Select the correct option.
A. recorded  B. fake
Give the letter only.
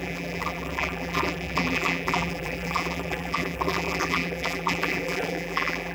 B